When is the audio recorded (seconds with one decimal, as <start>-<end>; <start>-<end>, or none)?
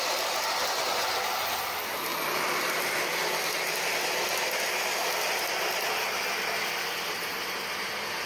0.0-8.3